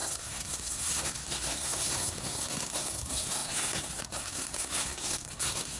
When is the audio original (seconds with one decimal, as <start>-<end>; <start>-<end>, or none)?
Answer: none